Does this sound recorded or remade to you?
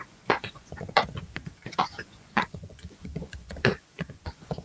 remade